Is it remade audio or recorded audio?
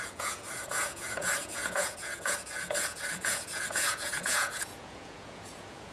remade